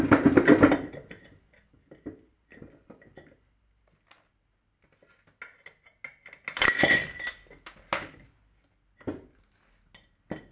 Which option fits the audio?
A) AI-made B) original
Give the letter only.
B